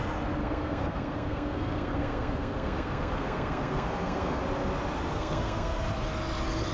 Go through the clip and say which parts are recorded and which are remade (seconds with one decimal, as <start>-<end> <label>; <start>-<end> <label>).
0.0-0.4 recorded; 0.4-4.4 remade; 4.4-5.1 recorded; 5.1-5.8 remade; 5.8-6.7 recorded